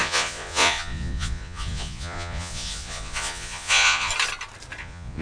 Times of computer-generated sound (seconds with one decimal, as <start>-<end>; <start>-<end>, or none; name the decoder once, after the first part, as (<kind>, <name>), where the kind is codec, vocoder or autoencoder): 0.0-4.1 (vocoder, Vocos); 4.8-5.2